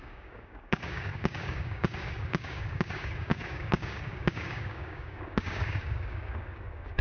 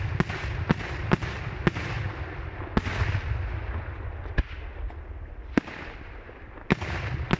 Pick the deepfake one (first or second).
first